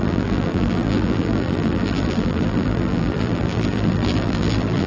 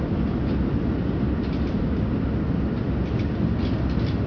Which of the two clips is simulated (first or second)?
first